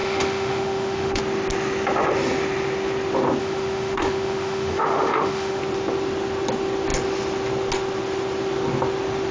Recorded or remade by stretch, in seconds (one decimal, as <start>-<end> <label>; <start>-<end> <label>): 0.0-1.2 remade; 1.2-3.4 recorded; 3.4-5.6 remade; 5.6-9.3 recorded